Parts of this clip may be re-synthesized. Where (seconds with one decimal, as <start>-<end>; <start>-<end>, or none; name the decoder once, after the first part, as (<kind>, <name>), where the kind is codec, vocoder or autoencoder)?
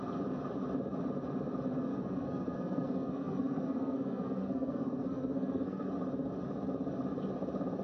1.9-5.9 (codec, SNAC)